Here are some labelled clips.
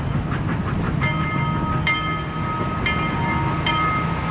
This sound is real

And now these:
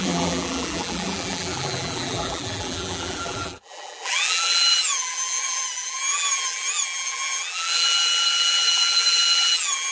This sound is fake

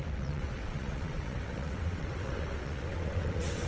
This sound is fake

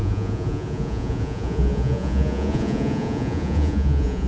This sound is fake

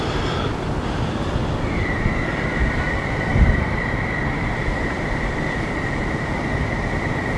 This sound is fake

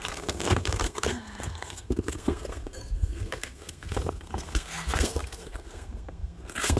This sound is fake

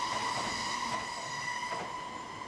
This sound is real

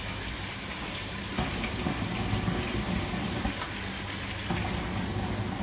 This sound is real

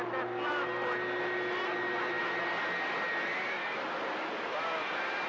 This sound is real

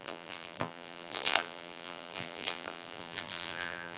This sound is fake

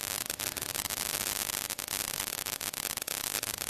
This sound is real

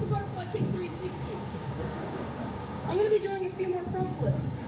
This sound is fake